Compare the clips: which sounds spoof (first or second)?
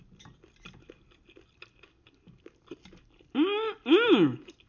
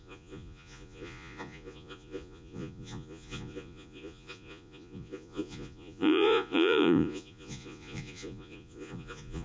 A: second